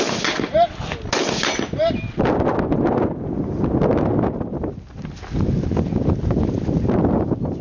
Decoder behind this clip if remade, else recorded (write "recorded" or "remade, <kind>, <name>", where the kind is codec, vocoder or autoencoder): recorded